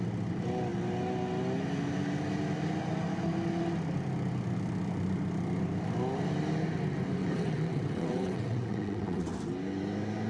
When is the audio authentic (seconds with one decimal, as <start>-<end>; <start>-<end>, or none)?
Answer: 0.0-7.2; 9.3-10.3